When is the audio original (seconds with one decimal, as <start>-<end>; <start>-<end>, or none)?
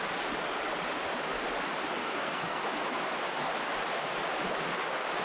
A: 0.0-2.0; 2.6-5.2